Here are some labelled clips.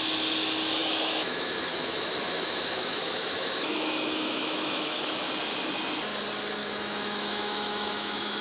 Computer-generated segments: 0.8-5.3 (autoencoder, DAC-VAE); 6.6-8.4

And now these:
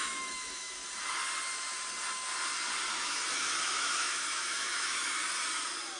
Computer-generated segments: 0.0-0.8 (autoencoder, DAC-VAE); 2.9-5.2

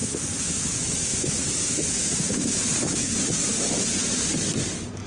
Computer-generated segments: 0.0-3.1 (autoencoder, DAC-VAE)

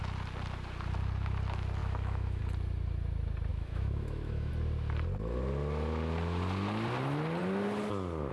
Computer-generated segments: 1.8-2.4 (autoencoder, DAC-VAE); 3.5-4.5

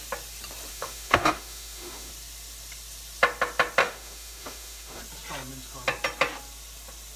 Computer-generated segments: 0.7-2.1 (autoencoder, DAC-VAE); 3.8-5.0

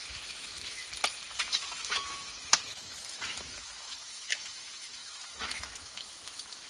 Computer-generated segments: 0.0-0.8 (autoencoder, DAC-VAE); 1.4-6.7

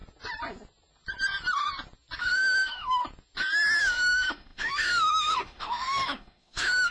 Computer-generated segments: 2.2-3.0 (autoencoder, DAC-VAE); 3.8-6.9